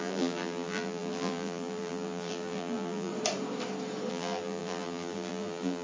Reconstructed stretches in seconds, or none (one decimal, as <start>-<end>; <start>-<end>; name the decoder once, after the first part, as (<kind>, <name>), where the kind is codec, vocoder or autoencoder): 0.0-3.1 (vocoder, BigVGAN v2); 4.1-5.8

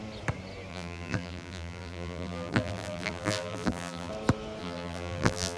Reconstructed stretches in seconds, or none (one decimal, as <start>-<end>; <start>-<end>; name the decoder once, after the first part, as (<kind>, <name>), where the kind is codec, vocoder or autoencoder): 0.7-4.1 (vocoder, BigVGAN v2); 4.6-5.6

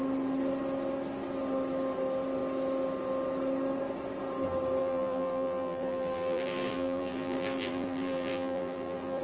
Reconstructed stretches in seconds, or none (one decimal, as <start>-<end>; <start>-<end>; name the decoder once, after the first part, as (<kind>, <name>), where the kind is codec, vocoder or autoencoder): 4.8-9.2 (vocoder, BigVGAN v2)

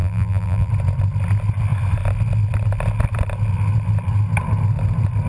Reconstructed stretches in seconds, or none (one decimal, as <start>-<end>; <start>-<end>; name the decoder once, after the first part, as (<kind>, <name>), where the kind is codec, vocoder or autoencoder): 0.0-0.7 (vocoder, BigVGAN v2)

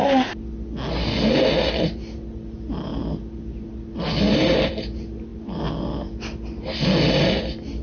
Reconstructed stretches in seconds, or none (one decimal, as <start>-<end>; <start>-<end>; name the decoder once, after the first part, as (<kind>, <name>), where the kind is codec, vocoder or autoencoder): none